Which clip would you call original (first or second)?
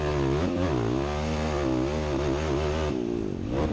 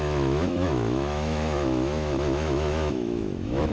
first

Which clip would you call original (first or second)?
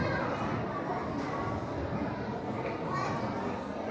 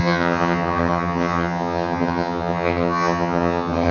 first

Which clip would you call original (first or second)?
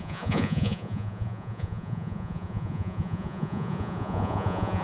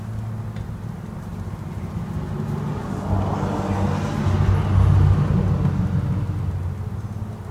second